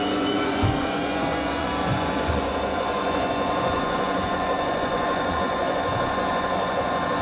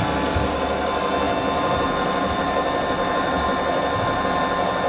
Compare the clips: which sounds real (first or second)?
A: second